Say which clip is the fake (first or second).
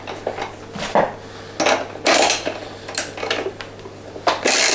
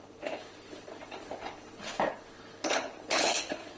second